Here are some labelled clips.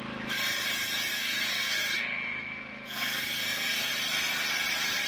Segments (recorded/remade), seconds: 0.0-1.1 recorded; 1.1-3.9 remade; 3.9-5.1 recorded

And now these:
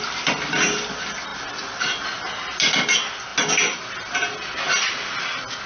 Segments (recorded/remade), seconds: 0.0-5.7 recorded